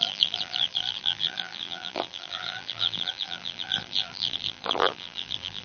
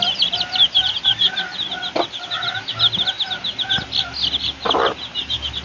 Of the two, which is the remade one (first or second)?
first